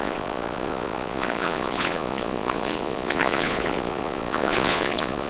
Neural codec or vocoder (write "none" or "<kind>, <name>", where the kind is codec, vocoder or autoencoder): vocoder, Vocos